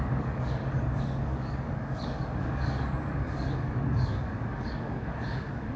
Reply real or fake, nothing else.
fake